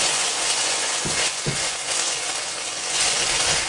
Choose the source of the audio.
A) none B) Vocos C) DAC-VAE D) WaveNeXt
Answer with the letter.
B